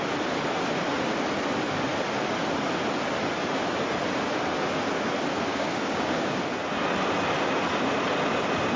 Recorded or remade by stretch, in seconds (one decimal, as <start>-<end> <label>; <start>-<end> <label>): 0.0-5.5 recorded; 5.5-6.4 remade; 6.4-8.8 recorded